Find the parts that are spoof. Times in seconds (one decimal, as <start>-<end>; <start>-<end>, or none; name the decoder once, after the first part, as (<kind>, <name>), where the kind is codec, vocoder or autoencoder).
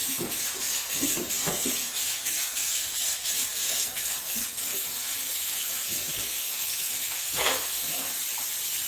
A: 0.0-8.1 (codec, SNAC)